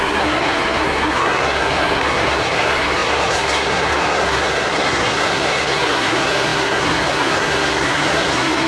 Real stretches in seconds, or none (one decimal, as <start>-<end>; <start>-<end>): none